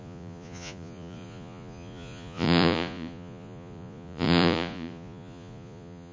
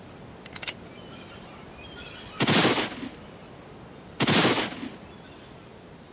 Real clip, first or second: second